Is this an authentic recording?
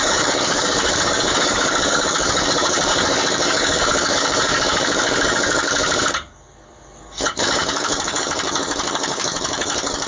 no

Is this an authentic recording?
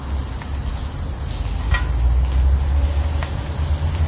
yes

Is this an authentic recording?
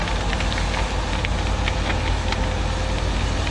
yes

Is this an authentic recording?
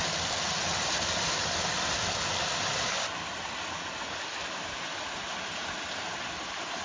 yes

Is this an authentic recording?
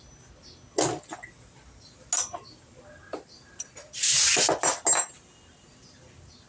yes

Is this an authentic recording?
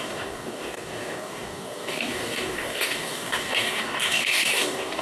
no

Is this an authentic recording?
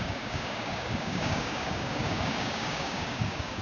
no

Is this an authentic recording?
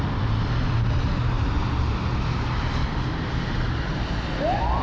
yes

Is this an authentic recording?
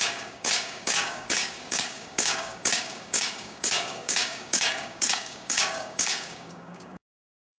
no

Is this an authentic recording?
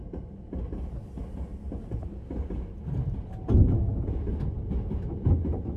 yes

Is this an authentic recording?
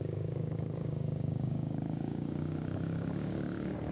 no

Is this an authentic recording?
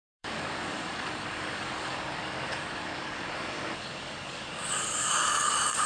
no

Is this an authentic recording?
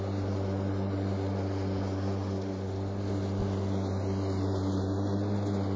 yes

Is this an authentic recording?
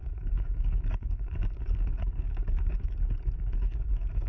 no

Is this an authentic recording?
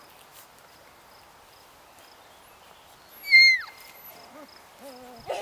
yes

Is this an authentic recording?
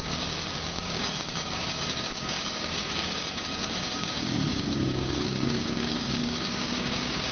no